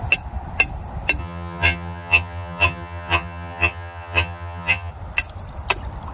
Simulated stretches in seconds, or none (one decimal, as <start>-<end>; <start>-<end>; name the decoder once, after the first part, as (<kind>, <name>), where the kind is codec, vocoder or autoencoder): 1.2-4.9 (vocoder, HiFi-GAN)